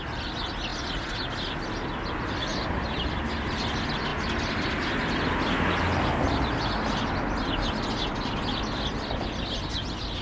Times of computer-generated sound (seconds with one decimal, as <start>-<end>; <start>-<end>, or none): 2.5-3.1